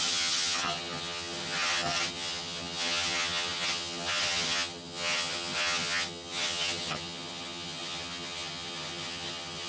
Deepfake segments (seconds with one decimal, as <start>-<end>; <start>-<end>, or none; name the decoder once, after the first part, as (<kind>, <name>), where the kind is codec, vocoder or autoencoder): 0.0-9.7 (vocoder, HiFi-GAN)